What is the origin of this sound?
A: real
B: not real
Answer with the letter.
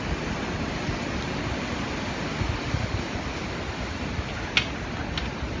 A